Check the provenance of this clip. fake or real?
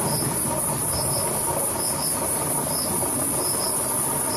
real